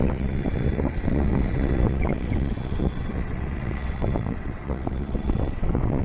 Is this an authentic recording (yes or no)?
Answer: no